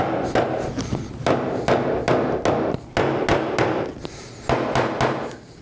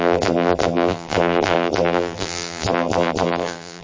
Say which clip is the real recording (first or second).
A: first